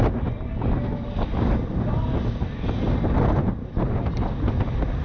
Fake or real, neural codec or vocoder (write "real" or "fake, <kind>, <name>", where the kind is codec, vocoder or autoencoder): real